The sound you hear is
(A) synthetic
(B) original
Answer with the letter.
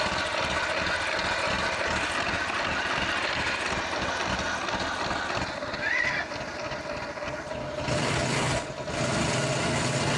B